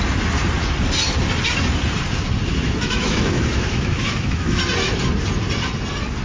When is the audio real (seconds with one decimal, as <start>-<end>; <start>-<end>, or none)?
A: 0.0-2.5; 4.6-6.2